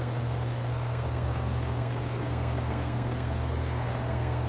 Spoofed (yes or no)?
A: yes